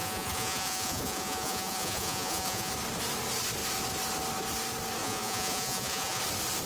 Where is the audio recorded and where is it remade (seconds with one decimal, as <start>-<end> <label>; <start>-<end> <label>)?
0.0-2.7 remade; 2.7-5.0 recorded; 5.0-6.2 remade; 6.2-6.7 recorded